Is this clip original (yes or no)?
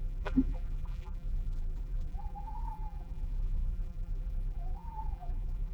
no